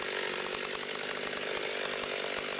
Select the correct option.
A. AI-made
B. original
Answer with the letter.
B